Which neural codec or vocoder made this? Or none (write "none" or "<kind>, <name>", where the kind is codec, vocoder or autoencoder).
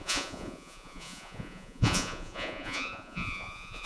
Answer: vocoder, Vocos